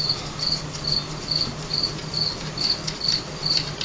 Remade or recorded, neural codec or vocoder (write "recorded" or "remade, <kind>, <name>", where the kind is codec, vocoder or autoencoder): recorded